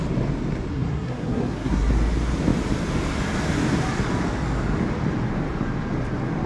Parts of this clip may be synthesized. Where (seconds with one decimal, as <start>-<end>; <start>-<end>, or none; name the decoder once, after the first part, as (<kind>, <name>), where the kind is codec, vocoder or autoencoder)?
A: 0.7-1.9 (codec, SNAC)